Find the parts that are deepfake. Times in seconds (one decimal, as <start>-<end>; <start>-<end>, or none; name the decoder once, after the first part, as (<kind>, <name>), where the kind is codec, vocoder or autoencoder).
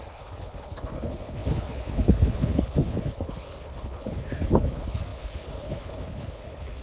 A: 0.0-6.8 (codec, HILCodec)